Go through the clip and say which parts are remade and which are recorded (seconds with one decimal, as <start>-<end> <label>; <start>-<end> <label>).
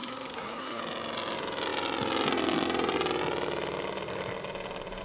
0.0-0.8 remade; 0.8-5.0 recorded